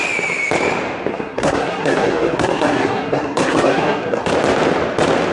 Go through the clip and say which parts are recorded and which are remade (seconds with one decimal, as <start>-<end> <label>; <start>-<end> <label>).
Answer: 0.0-1.1 recorded; 1.1-4.3 remade; 4.3-5.3 recorded

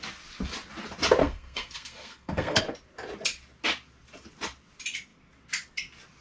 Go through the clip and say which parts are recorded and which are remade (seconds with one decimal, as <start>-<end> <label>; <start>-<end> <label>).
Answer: 0.0-1.2 recorded; 1.2-2.6 remade; 2.6-6.2 recorded

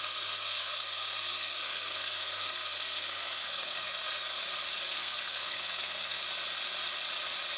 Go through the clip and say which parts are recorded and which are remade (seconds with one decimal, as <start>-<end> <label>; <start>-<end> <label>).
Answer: 0.0-4.4 remade; 4.4-4.9 recorded; 4.9-6.2 remade; 6.2-7.6 recorded

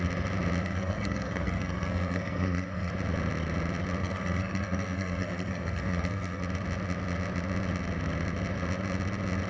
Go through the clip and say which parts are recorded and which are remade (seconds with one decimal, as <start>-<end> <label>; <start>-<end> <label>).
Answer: 0.0-0.6 recorded; 0.6-2.9 remade; 2.9-4.0 recorded; 4.0-6.4 remade; 6.4-9.5 recorded

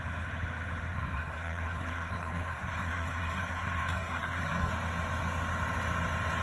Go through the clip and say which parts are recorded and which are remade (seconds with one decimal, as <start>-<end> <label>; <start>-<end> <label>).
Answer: 0.0-0.9 recorded; 0.9-4.7 remade; 4.7-6.4 recorded